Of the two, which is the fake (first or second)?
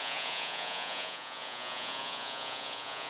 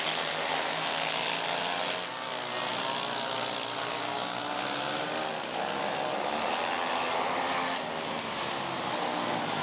first